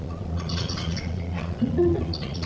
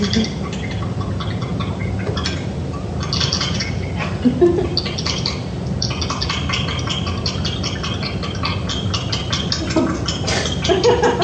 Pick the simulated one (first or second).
first